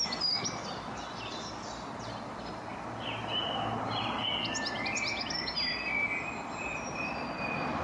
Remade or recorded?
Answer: recorded